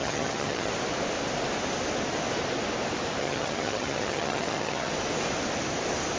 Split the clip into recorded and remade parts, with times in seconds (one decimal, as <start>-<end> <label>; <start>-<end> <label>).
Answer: 0.0-0.7 remade; 0.7-3.2 recorded; 3.2-4.9 remade; 4.9-6.2 recorded